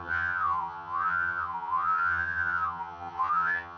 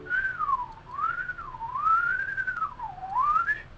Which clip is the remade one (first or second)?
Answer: first